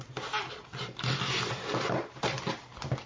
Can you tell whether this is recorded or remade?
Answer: recorded